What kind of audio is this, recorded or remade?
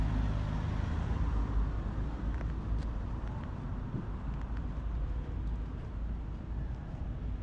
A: recorded